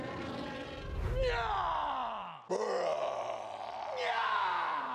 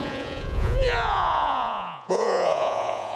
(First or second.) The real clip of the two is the first